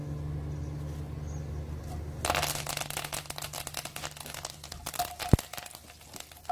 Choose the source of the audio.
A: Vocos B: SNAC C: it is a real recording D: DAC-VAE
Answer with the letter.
C